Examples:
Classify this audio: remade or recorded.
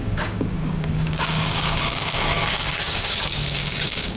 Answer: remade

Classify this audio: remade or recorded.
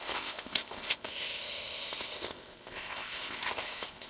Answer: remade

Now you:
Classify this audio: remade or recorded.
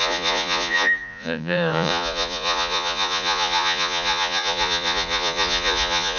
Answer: remade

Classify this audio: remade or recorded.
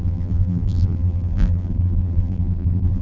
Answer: remade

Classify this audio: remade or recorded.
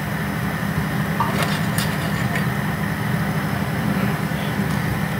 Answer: recorded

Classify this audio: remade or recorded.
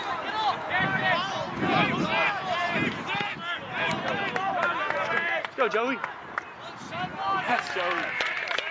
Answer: recorded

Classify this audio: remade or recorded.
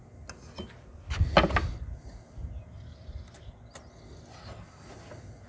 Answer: recorded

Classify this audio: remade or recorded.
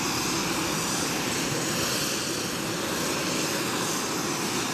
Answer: recorded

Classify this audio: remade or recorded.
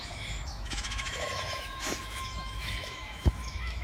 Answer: remade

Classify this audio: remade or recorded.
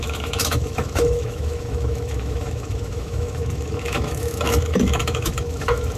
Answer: remade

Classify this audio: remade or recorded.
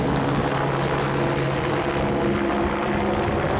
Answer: recorded